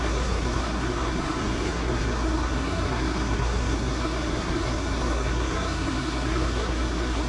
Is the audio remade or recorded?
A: remade